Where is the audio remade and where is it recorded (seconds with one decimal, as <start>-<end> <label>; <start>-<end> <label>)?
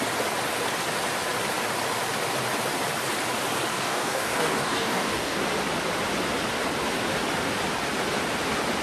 0.0-3.7 recorded; 3.7-5.4 remade; 5.4-8.8 recorded